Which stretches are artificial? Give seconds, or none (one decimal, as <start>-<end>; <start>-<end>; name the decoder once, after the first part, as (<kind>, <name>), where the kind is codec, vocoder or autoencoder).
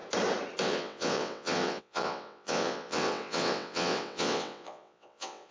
0.6-5.5 (vocoder, WaveNeXt)